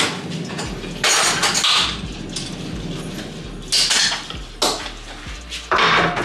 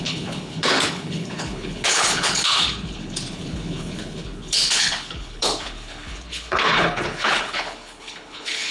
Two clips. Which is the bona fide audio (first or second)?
first